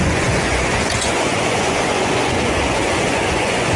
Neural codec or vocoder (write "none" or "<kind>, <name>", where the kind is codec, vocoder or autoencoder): vocoder, Vocos